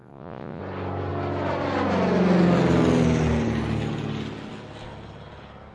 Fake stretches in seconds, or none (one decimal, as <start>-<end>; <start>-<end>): 0.0-0.6